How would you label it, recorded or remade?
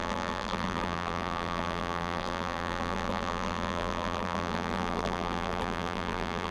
remade